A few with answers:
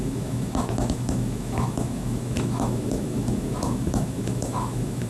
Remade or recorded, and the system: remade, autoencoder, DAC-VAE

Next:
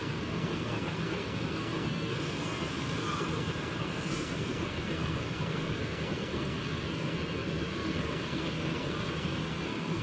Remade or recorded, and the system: remade, codec, SNAC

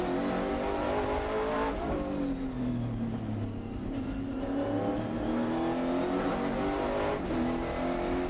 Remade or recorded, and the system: recorded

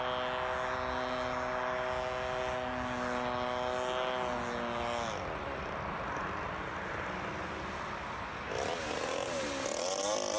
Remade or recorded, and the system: recorded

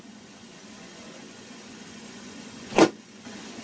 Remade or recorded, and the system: remade, vocoder, Vocos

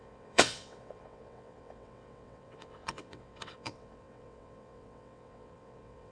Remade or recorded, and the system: remade, vocoder, WaveNeXt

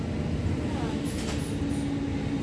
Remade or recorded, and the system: recorded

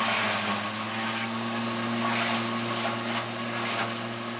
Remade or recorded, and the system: recorded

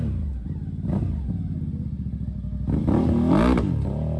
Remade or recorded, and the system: recorded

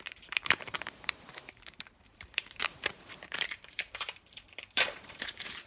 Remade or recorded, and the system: remade, vocoder, BigVGAN v2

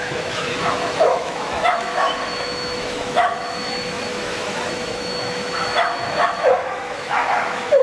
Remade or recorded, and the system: remade, autoencoder, DAC-VAE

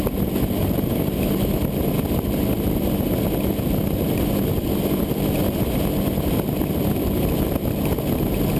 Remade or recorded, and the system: recorded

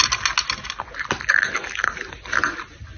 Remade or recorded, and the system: recorded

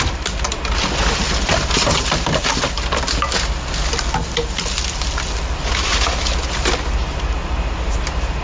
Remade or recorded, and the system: recorded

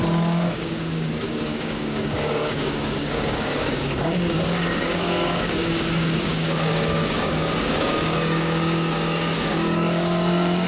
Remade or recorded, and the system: remade, codec, DAC